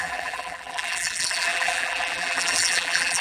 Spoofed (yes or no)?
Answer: yes